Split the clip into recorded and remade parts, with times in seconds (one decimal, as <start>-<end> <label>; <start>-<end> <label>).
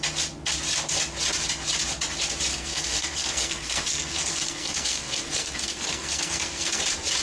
0.0-2.5 recorded; 2.5-6.8 remade; 6.8-7.2 recorded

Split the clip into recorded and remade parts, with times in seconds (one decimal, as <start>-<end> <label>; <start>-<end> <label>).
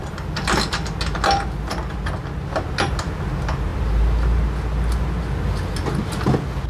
0.0-6.7 recorded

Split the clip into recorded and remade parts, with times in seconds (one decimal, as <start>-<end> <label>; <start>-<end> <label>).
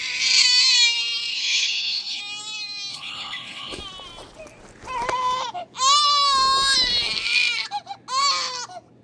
0.0-1.3 recorded; 1.3-2.2 remade; 2.2-2.9 recorded; 2.9-3.8 remade; 3.8-9.0 recorded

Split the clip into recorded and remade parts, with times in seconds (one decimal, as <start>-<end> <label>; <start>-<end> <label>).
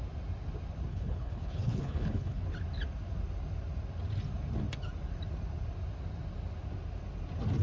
0.0-0.9 recorded; 0.9-2.4 remade; 2.4-7.6 recorded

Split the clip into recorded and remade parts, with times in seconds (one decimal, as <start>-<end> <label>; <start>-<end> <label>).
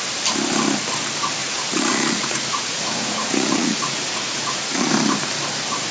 0.0-1.4 recorded; 1.4-4.9 remade; 4.9-5.9 recorded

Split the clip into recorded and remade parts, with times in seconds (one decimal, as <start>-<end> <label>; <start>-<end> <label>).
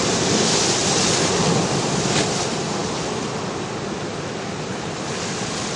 0.0-0.8 recorded; 0.8-2.4 remade; 2.4-5.8 recorded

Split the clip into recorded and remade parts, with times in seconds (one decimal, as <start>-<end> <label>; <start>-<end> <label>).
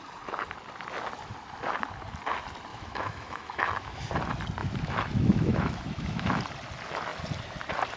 0.0-2.7 recorded; 2.7-4.1 remade; 4.1-4.6 recorded; 4.6-6.4 remade; 6.4-8.0 recorded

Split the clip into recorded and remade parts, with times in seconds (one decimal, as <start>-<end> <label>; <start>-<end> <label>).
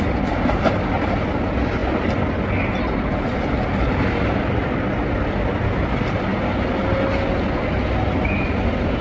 0.0-9.0 recorded